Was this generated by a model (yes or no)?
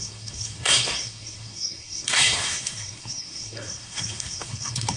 yes